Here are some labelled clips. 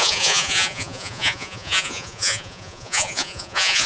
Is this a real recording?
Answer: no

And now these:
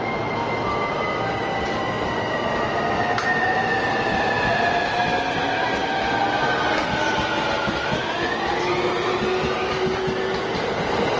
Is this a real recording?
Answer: yes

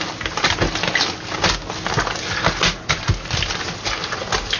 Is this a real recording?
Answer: yes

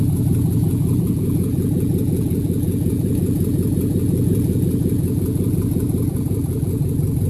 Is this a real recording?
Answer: no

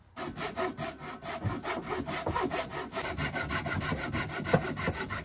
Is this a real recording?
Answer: yes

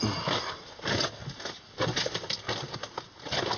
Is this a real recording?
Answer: yes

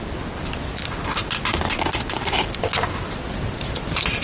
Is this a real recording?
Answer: yes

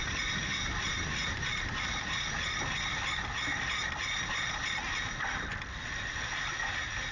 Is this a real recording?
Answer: yes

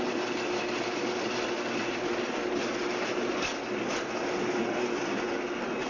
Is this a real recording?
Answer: yes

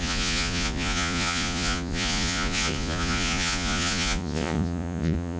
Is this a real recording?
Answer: no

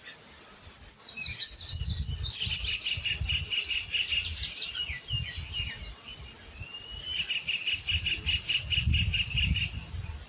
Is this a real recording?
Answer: yes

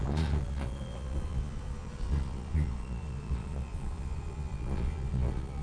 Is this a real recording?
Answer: no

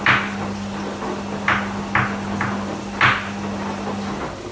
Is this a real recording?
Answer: yes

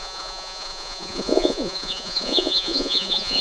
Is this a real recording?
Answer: no